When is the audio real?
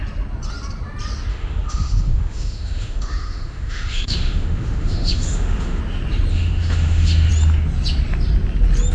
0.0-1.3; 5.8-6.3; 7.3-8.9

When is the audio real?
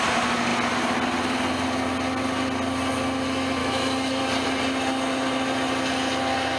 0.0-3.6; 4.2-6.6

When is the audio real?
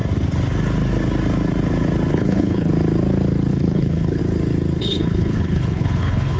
0.0-2.1; 2.7-3.5; 4.2-4.8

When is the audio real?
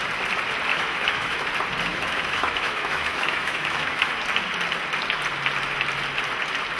0.0-0.7; 1.5-1.9; 4.1-6.8